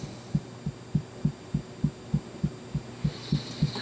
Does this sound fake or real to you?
real